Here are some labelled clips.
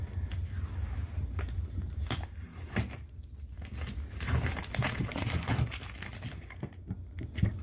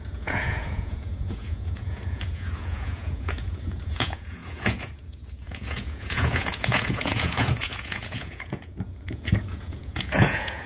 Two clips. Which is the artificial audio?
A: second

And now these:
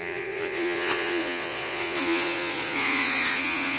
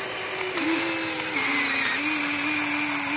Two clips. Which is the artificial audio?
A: first